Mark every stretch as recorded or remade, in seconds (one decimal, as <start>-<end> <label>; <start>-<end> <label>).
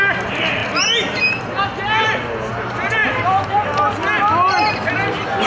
0.0-0.6 remade; 0.6-2.5 recorded; 2.5-3.0 remade; 3.0-4.7 recorded; 4.7-5.5 remade